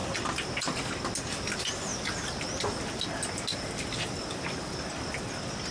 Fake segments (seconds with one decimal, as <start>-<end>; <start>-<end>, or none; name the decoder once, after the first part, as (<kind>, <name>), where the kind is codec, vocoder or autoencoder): none